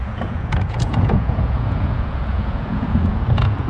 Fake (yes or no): yes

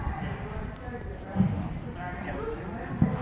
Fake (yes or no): no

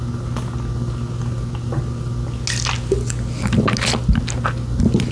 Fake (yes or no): no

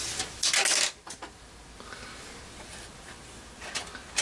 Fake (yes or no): no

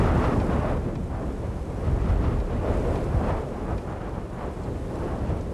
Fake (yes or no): no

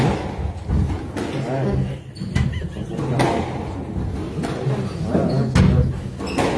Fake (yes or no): no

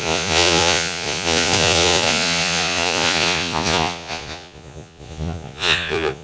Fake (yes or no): yes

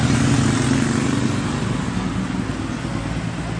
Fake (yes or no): no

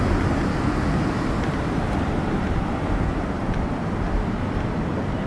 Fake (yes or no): no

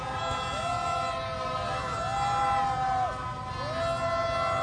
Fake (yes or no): no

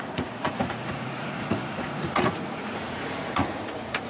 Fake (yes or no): yes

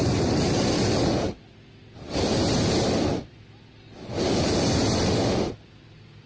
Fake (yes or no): no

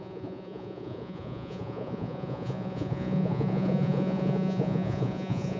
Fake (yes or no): yes